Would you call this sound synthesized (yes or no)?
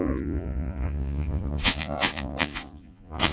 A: yes